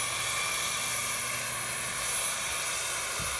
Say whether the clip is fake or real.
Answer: real